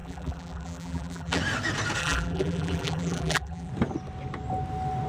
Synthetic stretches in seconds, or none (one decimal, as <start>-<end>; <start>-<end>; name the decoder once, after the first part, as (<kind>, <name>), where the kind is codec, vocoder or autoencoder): 0.0-1.4 (vocoder, BigVGAN v2); 2.0-3.7

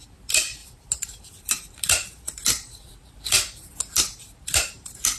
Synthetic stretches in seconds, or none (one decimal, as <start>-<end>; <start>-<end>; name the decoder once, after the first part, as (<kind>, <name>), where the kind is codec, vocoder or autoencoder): 0.6-3.7 (vocoder, BigVGAN v2)

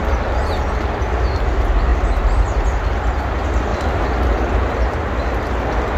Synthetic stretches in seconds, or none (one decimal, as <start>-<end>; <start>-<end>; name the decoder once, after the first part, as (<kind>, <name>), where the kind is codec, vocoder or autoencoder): 1.9-3.2 (vocoder, BigVGAN v2); 3.7-4.8

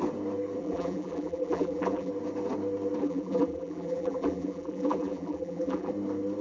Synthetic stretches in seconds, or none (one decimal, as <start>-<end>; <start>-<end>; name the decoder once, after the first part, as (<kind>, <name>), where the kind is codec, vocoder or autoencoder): 0.6-2.1 (vocoder, BigVGAN v2); 3.0-5.9